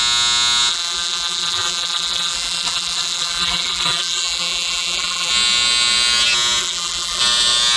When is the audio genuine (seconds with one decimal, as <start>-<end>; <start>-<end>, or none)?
0.0-0.7; 5.3-6.6; 7.2-7.8